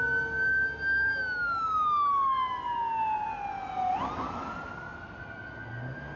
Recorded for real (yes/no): yes